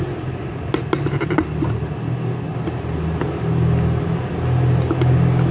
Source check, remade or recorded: recorded